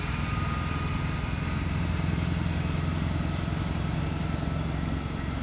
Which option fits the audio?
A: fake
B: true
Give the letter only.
B